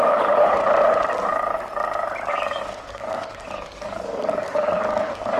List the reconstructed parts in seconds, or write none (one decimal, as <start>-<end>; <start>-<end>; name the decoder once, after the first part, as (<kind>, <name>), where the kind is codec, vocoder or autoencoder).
0.0-0.6 (codec, DAC); 2.3-5.4